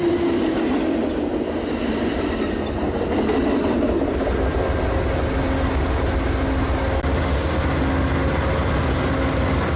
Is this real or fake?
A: real